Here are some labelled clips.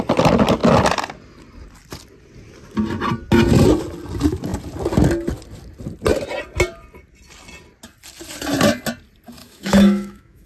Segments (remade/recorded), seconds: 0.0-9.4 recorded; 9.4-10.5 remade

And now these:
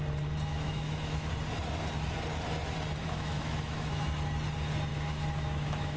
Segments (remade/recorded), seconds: 0.0-0.5 recorded; 0.5-1.3 remade; 1.3-3.0 recorded; 3.0-4.0 remade; 4.0-4.9 recorded; 4.9-6.0 remade

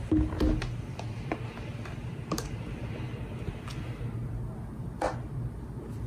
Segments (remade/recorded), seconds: 0.0-6.1 recorded

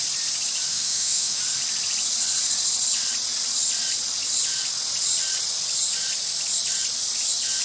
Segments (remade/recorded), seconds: 0.0-0.7 recorded; 0.7-1.4 remade; 1.4-7.6 recorded

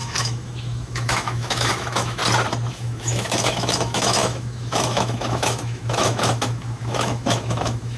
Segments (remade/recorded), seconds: 0.0-2.2 remade; 2.2-2.7 recorded; 2.7-8.0 remade

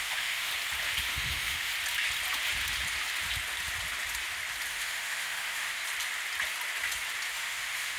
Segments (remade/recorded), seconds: 0.0-0.5 remade; 0.5-1.1 recorded; 1.1-1.7 remade; 1.7-4.7 recorded; 4.7-5.8 remade; 5.8-7.3 recorded; 7.3-8.0 remade